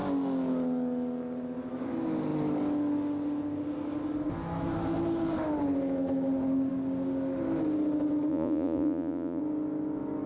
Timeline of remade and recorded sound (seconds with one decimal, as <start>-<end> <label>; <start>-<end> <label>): 0.0-8.3 recorded; 8.3-9.4 remade; 9.4-10.3 recorded